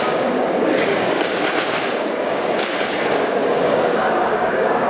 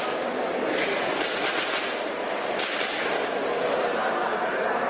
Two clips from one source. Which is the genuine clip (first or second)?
second